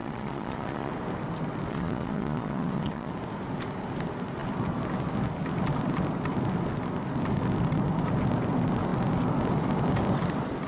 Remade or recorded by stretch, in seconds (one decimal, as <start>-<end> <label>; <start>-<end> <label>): 0.0-0.9 remade; 0.9-1.7 recorded; 1.7-3.1 remade; 3.1-10.7 recorded